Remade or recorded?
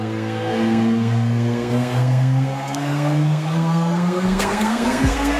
remade